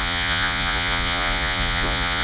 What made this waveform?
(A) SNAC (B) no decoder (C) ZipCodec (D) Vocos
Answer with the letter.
D